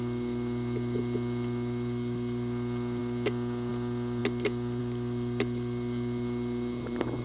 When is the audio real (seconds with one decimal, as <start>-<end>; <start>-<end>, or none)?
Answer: 0.0-7.2